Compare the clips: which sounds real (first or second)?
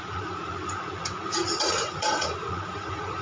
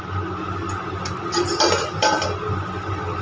second